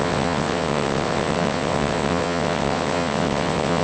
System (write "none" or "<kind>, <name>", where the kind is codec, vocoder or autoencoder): vocoder, WaveNeXt